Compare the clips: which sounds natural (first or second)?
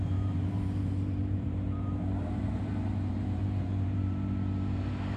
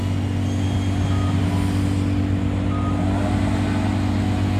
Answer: second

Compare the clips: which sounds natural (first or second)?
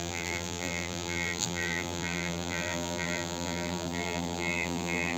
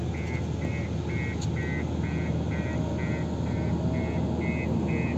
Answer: second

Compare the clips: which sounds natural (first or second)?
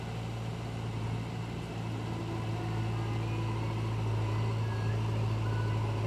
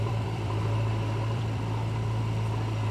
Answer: first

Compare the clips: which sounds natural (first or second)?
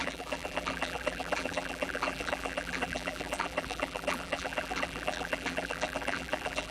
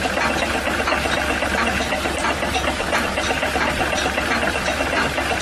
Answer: second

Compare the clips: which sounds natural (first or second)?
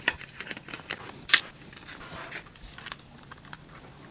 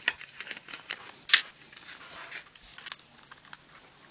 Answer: second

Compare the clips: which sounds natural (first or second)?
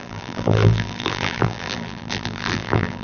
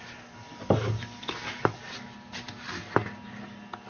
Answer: second